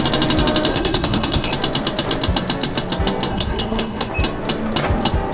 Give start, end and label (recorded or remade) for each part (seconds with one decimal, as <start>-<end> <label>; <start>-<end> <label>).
0.0-0.7 recorded; 0.7-1.5 remade; 1.5-3.3 recorded; 3.3-4.1 remade; 4.1-5.3 recorded